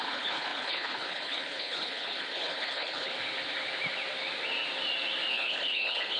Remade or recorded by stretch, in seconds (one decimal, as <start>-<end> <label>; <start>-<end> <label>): 0.0-3.1 remade; 3.1-5.3 recorded; 5.3-6.2 remade